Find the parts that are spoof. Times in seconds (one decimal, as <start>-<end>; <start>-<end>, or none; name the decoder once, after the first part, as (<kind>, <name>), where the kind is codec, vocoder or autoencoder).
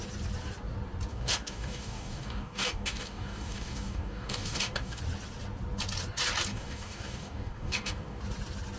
1.1-5.0 (codec, DAC); 6.5-8.2